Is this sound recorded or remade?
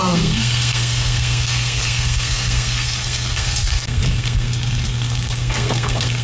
remade